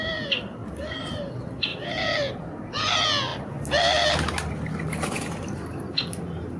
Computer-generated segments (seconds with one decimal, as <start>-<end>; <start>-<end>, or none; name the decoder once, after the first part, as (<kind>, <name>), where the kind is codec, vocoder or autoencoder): none